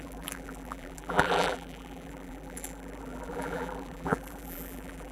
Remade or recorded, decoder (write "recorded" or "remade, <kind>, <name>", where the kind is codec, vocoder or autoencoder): remade, vocoder, BigVGAN v2